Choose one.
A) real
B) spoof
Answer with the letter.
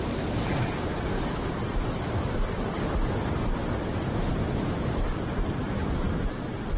A